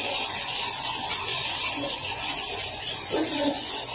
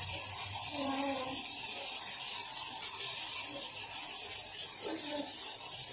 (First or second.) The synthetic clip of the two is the first